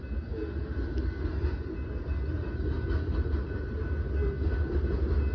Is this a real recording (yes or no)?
yes